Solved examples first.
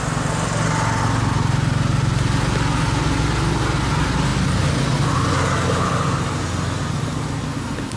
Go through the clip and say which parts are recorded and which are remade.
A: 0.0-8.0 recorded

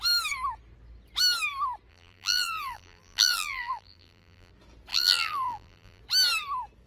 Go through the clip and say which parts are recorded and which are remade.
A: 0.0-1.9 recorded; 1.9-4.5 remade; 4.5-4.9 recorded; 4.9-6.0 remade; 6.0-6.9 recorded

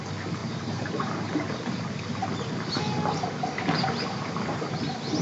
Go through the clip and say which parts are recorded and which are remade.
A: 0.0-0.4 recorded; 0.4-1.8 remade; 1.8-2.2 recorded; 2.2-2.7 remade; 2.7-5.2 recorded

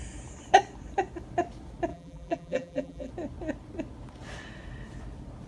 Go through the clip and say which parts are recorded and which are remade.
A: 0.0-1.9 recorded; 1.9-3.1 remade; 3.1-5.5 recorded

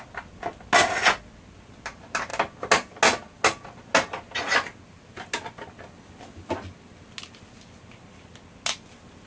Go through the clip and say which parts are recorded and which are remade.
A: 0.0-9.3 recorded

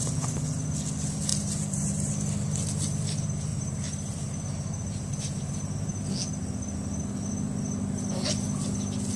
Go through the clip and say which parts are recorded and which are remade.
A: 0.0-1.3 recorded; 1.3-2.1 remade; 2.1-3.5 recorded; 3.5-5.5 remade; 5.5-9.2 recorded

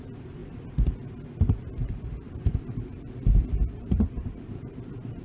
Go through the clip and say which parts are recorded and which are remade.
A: 0.0-0.4 recorded; 0.4-0.9 remade; 0.9-1.8 recorded; 1.8-5.2 remade

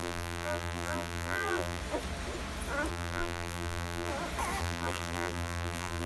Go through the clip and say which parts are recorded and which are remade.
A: 0.0-1.8 remade; 1.8-2.9 recorded; 2.9-4.1 remade; 4.1-4.6 recorded; 4.6-6.1 remade